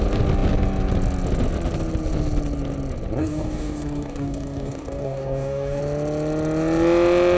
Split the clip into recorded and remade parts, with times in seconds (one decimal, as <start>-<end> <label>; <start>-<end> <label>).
0.0-3.2 recorded; 3.2-5.8 remade; 5.8-7.4 recorded